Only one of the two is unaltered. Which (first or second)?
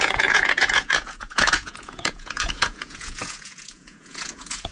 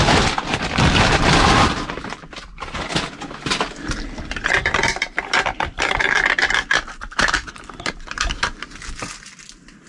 second